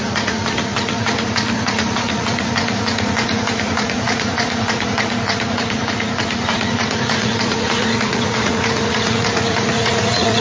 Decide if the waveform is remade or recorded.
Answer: remade